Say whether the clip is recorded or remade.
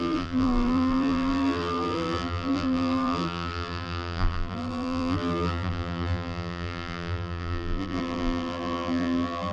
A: remade